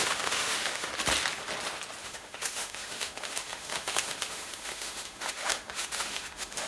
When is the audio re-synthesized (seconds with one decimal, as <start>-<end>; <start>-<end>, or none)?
0.0-0.9; 2.0-6.7

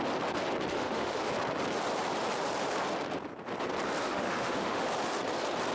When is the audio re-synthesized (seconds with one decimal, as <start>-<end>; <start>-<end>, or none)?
0.7-1.3; 4.0-4.9

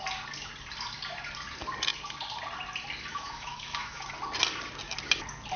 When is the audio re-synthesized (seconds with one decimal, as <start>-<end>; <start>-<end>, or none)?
3.1-4.0

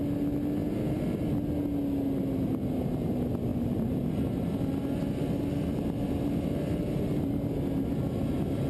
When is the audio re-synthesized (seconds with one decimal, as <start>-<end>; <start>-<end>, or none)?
none

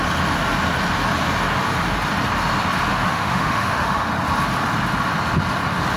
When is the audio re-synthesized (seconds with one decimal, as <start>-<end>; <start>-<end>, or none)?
2.9-4.1

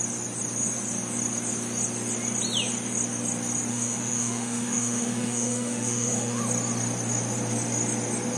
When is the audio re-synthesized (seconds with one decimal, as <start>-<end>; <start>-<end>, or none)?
3.7-6.4

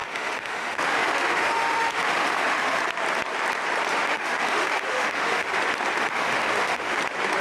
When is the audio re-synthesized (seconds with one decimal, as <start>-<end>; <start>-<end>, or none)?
0.0-2.8; 3.9-5.6; 6.0-7.0